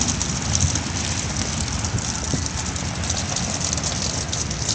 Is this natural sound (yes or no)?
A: yes